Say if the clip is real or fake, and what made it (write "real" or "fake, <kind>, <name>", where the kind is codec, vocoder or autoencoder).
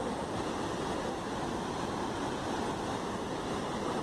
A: real